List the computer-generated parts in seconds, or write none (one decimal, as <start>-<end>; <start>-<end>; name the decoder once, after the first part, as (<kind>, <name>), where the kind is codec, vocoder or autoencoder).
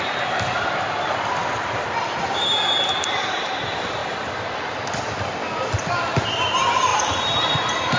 4.0-4.5 (vocoder, BigVGAN v2); 5.4-6.5; 6.9-7.5